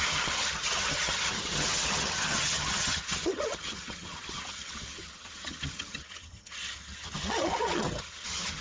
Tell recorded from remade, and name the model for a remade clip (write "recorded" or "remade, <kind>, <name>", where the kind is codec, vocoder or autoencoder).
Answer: remade, vocoder, HiFi-GAN